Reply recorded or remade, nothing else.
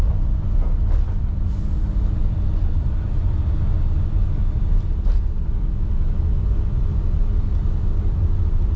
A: recorded